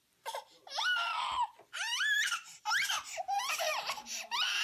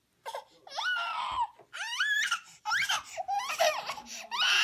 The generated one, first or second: first